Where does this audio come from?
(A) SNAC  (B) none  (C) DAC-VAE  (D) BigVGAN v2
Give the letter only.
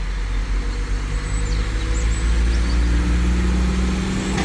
B